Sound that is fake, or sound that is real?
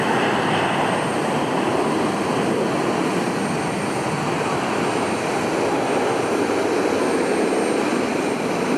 real